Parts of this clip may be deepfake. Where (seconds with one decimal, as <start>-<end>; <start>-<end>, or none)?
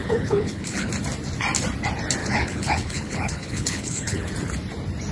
0.0-0.9; 2.2-4.3